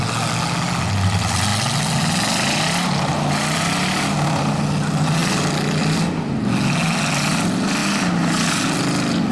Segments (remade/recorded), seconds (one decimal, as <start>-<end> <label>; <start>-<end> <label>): 0.0-9.3 recorded